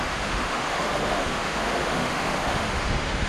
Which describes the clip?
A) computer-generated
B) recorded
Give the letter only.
A